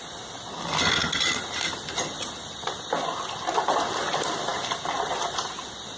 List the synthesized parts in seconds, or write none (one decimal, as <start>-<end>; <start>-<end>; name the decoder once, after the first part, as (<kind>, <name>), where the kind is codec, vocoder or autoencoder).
none